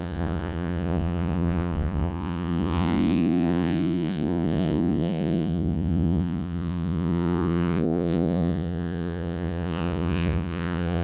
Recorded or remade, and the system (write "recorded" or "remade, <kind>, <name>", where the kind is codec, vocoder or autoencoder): remade, vocoder, Vocos